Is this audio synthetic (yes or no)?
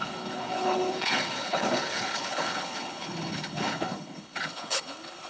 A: yes